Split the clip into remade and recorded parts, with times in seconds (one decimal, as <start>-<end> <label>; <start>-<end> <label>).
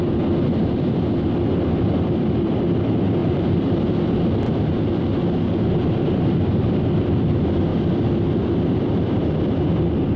0.0-3.2 recorded; 3.2-3.9 remade; 3.9-10.2 recorded